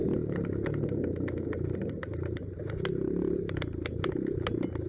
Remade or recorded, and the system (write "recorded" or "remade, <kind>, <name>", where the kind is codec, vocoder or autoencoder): recorded